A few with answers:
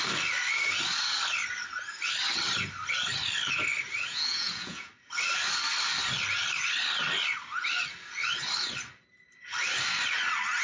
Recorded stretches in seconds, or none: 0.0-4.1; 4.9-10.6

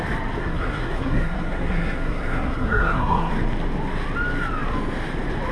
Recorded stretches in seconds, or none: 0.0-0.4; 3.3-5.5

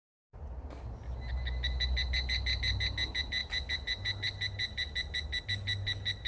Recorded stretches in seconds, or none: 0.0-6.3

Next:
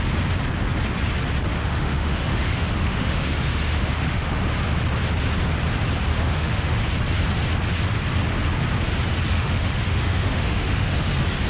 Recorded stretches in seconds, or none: 0.0-1.5; 4.4-6.1; 6.8-9.3; 11.1-11.5